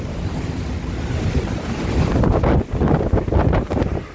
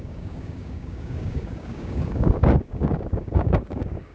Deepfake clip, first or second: second